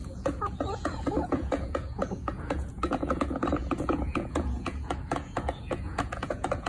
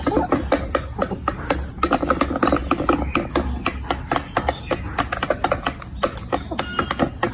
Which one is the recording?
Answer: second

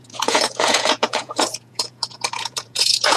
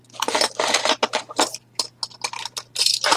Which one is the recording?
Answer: second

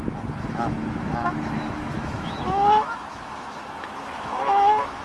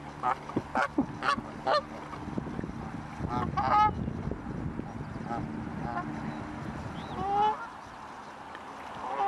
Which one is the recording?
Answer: second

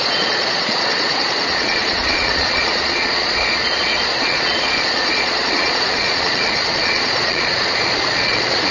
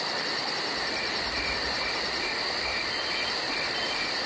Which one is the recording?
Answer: second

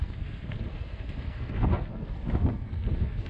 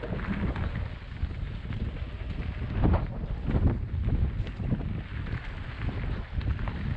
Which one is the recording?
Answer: second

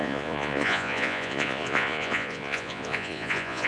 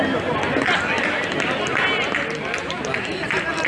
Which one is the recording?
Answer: second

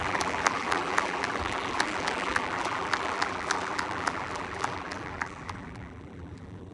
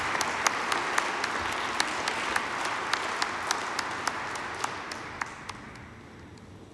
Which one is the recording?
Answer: second